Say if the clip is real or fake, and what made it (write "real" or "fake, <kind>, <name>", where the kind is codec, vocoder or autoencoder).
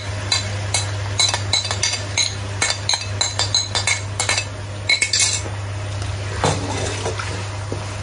real